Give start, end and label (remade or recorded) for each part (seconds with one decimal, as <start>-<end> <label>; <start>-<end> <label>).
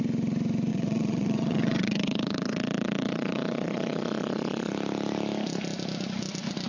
0.0-0.7 recorded; 0.7-4.7 remade; 4.7-6.7 recorded